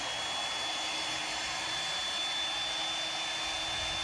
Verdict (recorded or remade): recorded